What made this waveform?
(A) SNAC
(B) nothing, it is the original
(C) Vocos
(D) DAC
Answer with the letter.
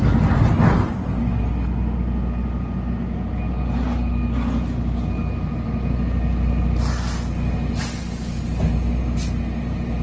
B